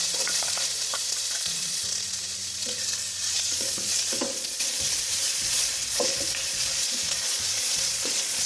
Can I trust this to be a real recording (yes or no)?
no